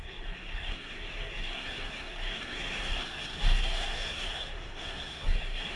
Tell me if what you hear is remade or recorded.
remade